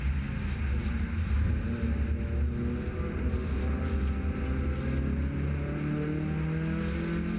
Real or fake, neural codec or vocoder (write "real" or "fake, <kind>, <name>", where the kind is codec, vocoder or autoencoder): real